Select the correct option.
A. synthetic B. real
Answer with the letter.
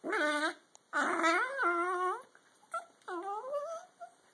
B